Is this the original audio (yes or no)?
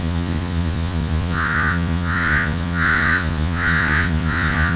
no